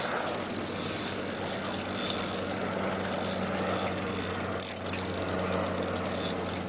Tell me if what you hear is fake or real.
real